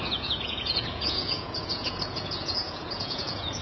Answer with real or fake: fake